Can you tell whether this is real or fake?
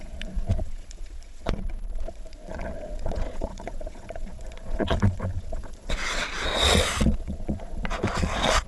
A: fake